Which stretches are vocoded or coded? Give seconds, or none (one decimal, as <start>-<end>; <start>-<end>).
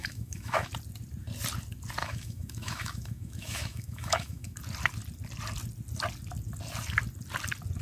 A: 0.0-0.7; 2.0-4.6